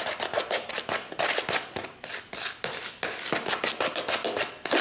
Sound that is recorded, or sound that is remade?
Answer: recorded